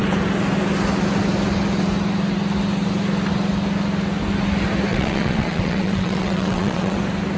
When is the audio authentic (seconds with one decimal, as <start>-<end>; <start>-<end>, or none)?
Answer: 0.0-4.9; 7.0-7.4